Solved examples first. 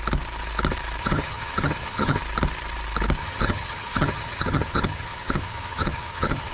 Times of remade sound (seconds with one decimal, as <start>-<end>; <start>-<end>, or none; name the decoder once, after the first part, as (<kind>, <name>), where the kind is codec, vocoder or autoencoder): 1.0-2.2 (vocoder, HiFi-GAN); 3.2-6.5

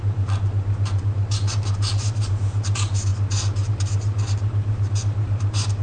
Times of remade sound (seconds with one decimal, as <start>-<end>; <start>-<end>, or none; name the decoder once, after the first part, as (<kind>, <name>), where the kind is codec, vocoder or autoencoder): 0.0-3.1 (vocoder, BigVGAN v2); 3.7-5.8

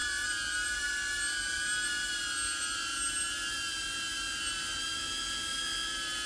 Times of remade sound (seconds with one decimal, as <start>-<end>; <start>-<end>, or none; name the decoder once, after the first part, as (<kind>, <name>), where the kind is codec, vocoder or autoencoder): none

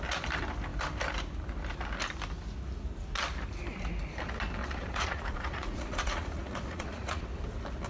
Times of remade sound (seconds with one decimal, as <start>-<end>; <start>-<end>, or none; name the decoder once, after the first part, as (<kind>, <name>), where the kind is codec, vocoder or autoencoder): 4.6-7.2 (vocoder, Vocos)

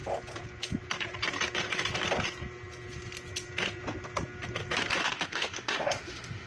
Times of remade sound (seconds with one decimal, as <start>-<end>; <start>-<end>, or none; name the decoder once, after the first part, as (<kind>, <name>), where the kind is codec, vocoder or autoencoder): 5.0-6.5 (autoencoder, DAC-VAE)

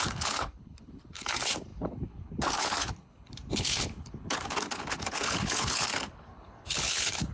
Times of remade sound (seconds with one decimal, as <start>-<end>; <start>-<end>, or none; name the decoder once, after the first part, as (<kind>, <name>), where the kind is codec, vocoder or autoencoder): 0.0-7.3 (codec, HILCodec)